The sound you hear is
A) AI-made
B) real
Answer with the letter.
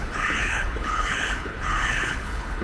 A